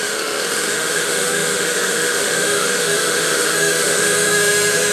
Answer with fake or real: fake